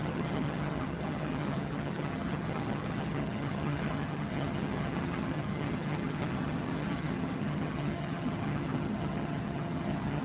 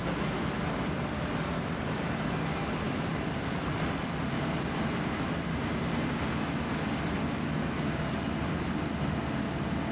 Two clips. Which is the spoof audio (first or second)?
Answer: first